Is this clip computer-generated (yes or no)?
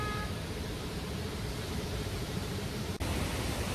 yes